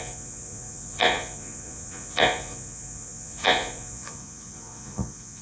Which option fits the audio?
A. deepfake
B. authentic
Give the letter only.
A